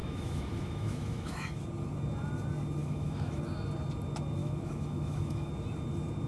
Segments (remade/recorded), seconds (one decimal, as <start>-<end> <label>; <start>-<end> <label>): 0.0-1.6 remade; 1.6-2.8 recorded; 2.8-3.4 remade; 3.4-4.4 recorded; 4.4-5.5 remade; 5.5-6.3 recorded